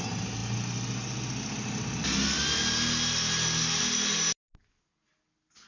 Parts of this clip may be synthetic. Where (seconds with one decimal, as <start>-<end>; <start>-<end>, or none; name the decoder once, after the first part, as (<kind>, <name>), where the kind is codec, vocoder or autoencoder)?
none